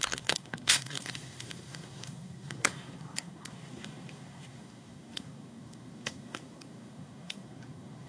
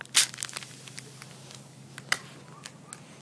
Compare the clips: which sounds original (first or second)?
second